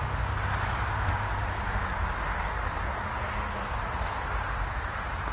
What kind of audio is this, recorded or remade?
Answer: recorded